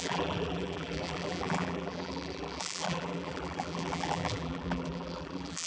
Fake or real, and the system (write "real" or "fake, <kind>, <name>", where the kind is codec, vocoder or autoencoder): fake, vocoder, BigVGAN v2